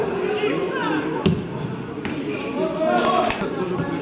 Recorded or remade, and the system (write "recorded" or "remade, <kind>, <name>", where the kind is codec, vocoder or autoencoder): recorded